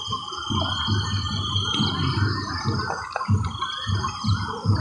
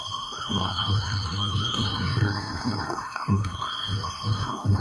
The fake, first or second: second